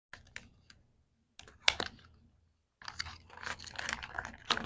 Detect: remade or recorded recorded